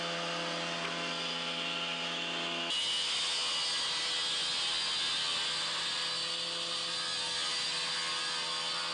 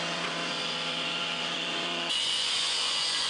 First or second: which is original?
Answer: first